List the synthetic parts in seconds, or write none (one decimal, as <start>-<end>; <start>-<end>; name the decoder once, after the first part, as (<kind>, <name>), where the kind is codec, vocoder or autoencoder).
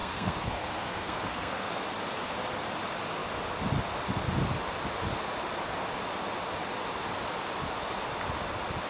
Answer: 0.0-1.8 (codec, SNAC)